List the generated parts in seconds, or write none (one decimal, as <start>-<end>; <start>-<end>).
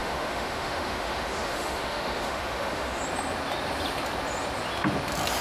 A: 0.0-3.0